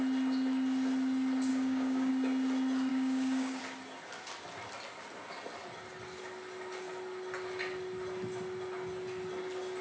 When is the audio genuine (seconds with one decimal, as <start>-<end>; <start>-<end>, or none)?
0.0-1.5; 2.1-2.9; 3.6-9.8